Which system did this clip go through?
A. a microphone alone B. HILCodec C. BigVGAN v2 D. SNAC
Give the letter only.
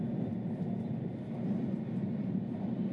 A